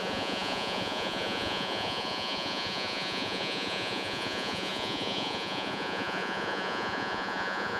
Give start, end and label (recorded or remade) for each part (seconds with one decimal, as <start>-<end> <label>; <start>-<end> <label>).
0.0-7.8 remade